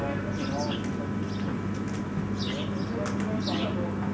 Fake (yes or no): no